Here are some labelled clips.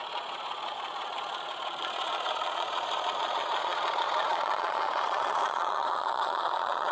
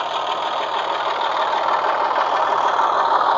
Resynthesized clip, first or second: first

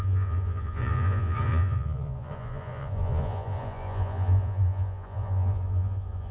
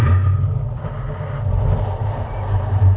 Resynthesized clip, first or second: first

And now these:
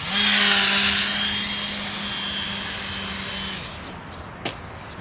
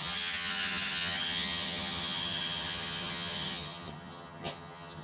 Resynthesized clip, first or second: second